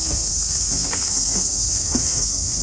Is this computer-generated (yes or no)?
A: yes